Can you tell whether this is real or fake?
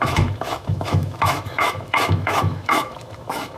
fake